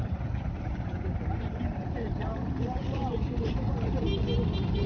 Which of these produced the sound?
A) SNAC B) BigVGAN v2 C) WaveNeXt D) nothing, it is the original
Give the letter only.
B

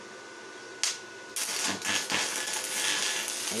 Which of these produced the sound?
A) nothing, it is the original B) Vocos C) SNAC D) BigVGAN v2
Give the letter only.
A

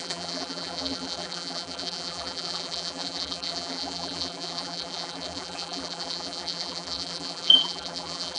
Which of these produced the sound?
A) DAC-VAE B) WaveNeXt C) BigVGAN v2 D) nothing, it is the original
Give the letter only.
C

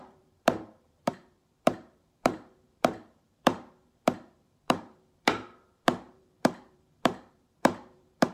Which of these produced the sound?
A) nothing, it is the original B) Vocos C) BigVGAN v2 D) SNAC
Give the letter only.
C